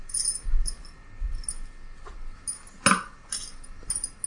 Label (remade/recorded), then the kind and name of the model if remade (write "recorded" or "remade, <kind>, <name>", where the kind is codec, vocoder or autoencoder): recorded